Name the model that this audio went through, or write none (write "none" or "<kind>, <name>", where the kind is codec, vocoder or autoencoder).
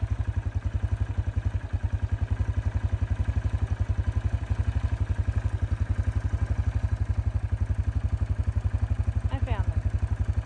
none